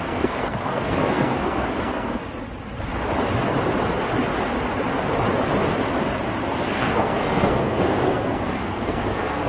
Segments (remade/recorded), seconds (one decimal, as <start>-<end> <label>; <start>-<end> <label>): 0.0-2.2 remade; 2.2-6.6 recorded; 6.6-9.5 remade